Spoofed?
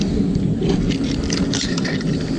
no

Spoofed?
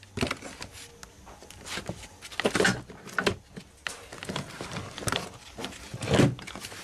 no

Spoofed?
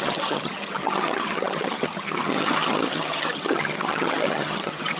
yes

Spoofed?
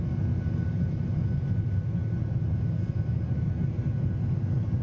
no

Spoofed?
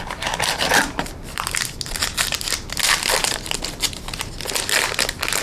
no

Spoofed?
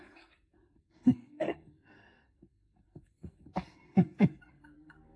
yes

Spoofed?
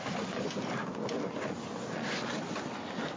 no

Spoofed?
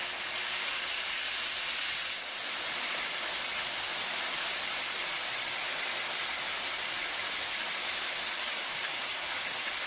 no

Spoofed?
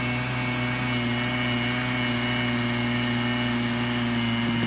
no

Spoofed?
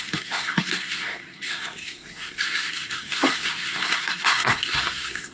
yes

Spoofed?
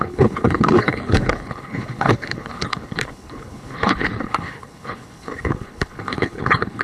yes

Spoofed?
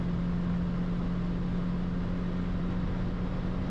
no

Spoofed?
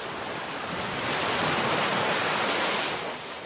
no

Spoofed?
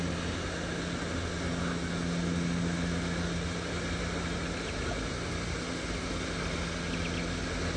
no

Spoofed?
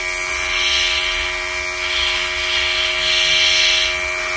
no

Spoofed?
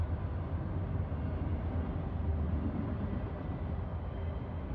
no